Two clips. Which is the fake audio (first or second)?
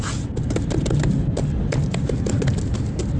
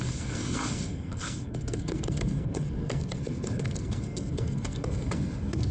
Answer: second